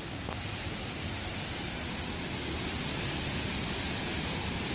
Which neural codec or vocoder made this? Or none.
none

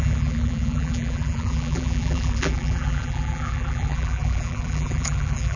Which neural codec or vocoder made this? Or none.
vocoder, BigVGAN v2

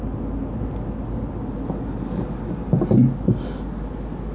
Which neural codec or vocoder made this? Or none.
none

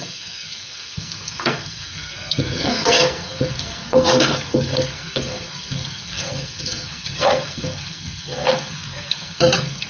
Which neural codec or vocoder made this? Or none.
codec, SNAC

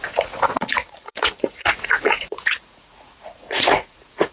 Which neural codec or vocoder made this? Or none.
vocoder, Vocos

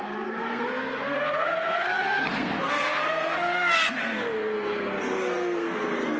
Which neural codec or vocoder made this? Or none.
codec, SNAC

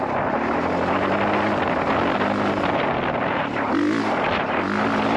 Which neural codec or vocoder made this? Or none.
none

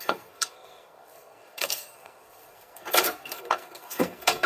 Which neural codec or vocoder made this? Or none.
codec, SNAC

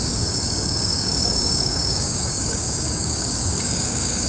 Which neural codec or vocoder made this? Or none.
codec, DAC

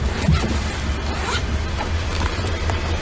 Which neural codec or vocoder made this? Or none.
vocoder, BigVGAN v2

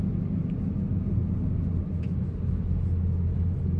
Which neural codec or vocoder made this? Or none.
none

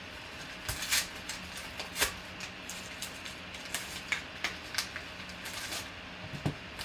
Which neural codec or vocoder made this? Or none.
none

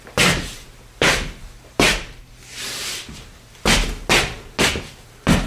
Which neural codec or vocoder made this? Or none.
none